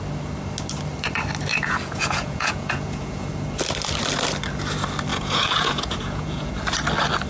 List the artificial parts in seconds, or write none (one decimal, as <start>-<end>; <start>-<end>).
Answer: 1.5-3.3; 5.1-6.5